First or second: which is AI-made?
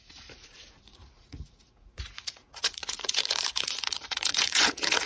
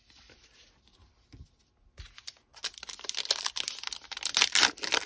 first